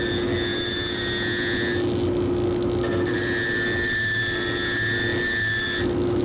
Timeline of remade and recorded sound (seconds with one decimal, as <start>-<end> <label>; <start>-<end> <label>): 0.0-6.2 recorded